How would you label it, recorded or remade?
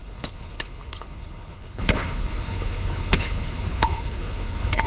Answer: remade